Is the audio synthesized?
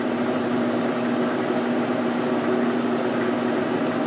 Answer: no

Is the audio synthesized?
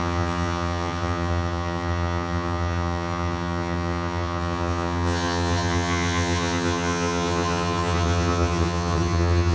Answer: yes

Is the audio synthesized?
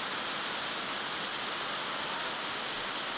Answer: no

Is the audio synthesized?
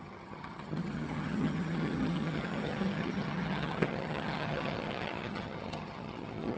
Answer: yes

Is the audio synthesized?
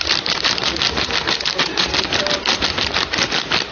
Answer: no